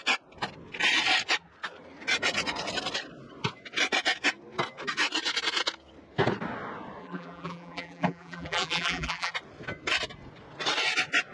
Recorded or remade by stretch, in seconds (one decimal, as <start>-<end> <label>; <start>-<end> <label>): 0.0-7.0 recorded; 7.0-9.3 remade; 9.3-11.3 recorded